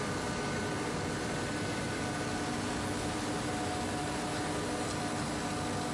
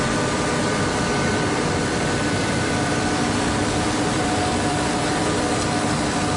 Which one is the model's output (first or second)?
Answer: second